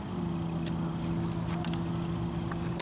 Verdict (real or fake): real